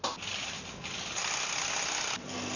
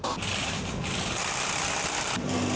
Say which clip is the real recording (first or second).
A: first